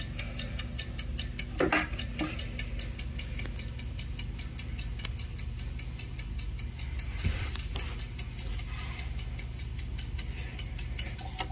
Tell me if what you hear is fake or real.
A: real